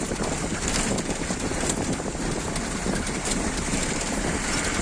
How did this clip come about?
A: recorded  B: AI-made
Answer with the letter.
A